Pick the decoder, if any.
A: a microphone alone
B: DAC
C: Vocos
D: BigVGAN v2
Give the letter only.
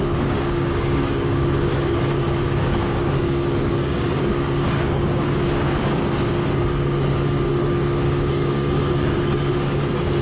B